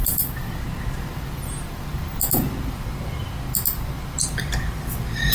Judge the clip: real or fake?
real